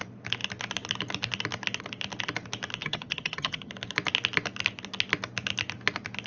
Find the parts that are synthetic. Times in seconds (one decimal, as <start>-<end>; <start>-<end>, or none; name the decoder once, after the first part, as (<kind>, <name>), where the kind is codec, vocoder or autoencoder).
2.8-3.7 (vocoder, HiFi-GAN)